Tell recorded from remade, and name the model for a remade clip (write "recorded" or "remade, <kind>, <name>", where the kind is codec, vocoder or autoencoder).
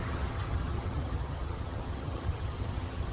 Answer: remade, vocoder, HiFi-GAN